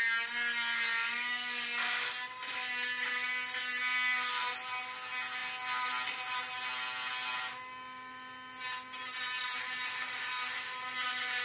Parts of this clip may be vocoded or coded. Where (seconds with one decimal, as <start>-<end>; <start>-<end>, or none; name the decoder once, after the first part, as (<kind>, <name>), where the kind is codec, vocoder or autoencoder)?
none